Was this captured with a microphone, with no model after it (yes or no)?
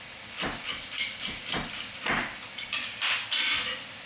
yes